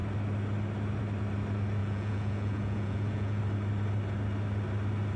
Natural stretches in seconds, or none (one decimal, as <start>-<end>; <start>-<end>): 0.0-1.8; 3.4-5.2